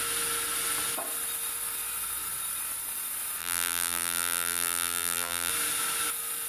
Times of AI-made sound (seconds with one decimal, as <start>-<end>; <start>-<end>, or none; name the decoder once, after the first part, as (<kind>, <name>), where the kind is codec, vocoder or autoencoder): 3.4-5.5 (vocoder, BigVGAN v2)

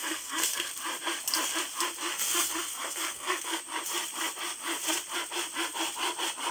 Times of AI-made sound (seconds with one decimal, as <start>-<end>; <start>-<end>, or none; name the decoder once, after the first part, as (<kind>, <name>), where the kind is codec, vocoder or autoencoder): 0.0-0.7 (codec, SNAC); 2.1-3.6

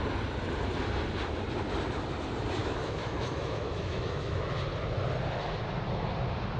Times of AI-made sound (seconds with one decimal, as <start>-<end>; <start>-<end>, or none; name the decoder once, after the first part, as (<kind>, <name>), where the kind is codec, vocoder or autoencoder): 2.6-4.6 (autoencoder, DAC-VAE)

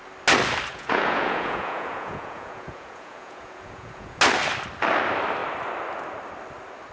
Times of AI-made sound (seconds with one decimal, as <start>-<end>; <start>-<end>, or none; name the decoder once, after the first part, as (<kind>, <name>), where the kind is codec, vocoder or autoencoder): 0.7-4.2 (vocoder, Vocos)